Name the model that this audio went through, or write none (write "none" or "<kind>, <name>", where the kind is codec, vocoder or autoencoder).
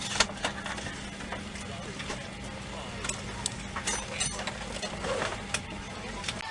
none